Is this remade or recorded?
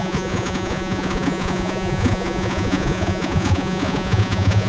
remade